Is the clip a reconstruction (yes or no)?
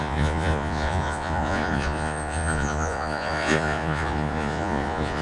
yes